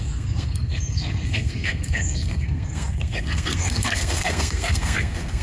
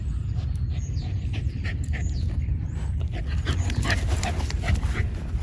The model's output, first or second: first